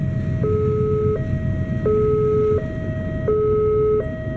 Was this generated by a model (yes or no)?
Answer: no